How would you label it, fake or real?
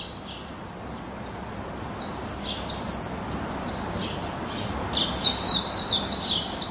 real